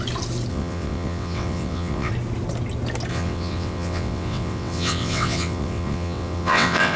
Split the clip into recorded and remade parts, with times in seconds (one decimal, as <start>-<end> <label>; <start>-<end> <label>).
0.0-0.5 recorded; 0.5-2.1 remade; 2.1-3.1 recorded; 3.1-7.0 remade